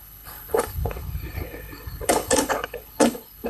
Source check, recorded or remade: remade